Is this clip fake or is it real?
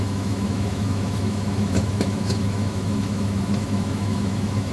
fake